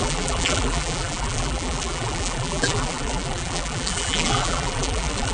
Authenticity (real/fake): fake